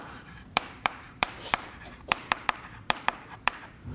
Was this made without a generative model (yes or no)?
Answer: no